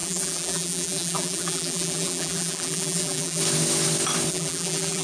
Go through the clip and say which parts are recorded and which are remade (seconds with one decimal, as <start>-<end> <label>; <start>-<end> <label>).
0.0-3.4 remade; 3.4-4.3 recorded; 4.3-5.0 remade